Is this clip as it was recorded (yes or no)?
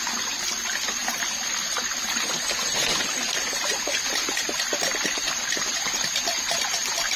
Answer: yes